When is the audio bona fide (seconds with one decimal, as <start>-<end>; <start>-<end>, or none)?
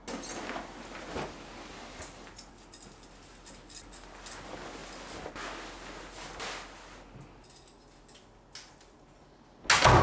0.0-10.0